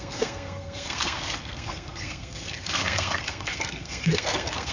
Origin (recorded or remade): remade